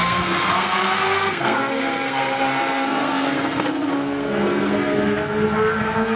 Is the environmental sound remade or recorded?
remade